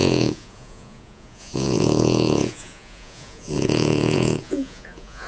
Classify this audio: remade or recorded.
remade